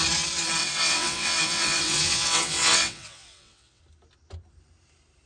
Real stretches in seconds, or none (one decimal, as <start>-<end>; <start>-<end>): 0.0-0.6; 3.8-5.3

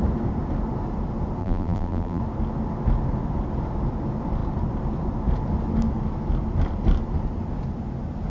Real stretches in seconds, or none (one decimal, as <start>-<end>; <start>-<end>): 0.0-1.4; 2.2-8.3

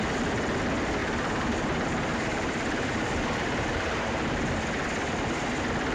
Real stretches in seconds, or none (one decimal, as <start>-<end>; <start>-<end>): 0.0-1.0; 4.5-5.9